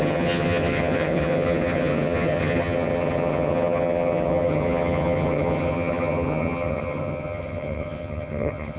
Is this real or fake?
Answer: fake